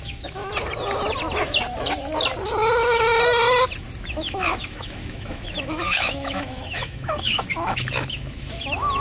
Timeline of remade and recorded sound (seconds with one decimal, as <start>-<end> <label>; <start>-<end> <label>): 0.0-0.4 remade; 0.4-4.1 recorded; 4.1-9.0 remade